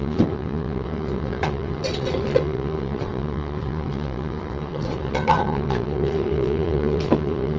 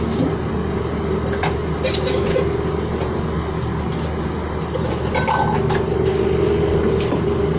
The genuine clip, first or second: second